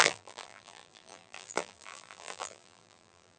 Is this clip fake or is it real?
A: fake